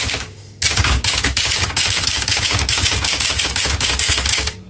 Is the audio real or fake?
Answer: fake